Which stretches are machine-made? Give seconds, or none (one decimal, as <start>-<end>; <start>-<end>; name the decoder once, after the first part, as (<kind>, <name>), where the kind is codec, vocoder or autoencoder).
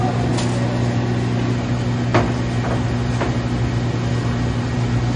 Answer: none